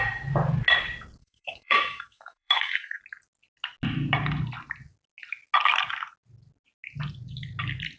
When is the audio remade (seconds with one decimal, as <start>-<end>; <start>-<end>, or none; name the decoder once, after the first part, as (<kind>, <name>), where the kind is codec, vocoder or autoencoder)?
1.2-3.0 (autoencoder, DAC-VAE)

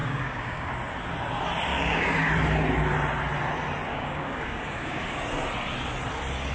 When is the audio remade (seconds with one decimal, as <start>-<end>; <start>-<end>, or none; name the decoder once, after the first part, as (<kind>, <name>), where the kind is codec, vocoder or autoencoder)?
0.0-0.7 (codec, DAC); 1.7-2.3; 3.9-5.0

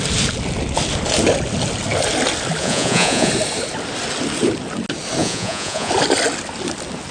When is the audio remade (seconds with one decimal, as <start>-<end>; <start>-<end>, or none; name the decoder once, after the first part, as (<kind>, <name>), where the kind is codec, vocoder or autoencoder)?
2.6-3.3 (vocoder, Vocos); 5.2-5.9

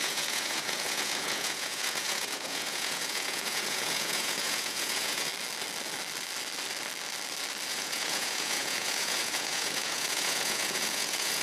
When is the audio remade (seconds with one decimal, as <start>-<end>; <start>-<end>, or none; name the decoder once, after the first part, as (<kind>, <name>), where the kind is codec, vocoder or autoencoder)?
0.0-5.3 (vocoder, Vocos); 7.7-11.4

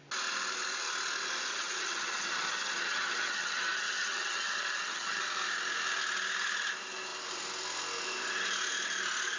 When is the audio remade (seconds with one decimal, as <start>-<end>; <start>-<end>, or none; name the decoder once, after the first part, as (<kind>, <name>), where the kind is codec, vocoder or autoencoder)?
1.5-5.2 (vocoder, HiFi-GAN)

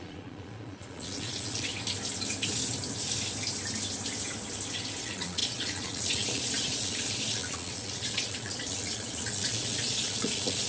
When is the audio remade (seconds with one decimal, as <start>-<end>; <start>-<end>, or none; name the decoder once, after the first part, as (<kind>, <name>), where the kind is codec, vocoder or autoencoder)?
0.0-1.7 (vocoder, Vocos); 5.0-10.7

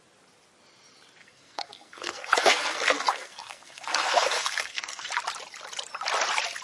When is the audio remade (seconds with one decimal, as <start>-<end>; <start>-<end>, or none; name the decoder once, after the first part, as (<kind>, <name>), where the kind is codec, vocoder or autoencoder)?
1.2-5.2 (codec, SNAC)